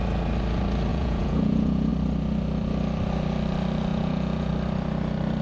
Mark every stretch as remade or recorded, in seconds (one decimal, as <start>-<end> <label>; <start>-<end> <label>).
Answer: 0.0-0.9 recorded; 0.9-1.9 remade; 1.9-3.9 recorded; 3.9-4.5 remade; 4.5-5.4 recorded